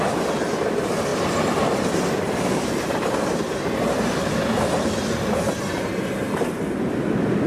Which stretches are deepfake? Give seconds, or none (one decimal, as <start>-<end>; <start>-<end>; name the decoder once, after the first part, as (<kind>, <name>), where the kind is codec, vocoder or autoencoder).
none